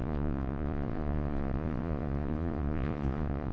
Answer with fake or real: fake